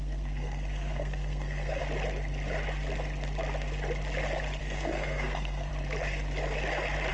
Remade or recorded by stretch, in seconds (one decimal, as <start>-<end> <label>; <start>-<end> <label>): 0.0-1.8 remade; 1.8-4.6 recorded; 4.6-5.7 remade; 5.7-7.1 recorded